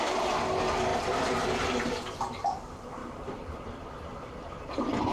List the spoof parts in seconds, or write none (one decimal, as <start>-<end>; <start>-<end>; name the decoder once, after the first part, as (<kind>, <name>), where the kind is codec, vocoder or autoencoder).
0.9-1.6 (vocoder, BigVGAN v2); 3.0-3.9